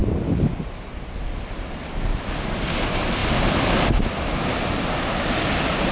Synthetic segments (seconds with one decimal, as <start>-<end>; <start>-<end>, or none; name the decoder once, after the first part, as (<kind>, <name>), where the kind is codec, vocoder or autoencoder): none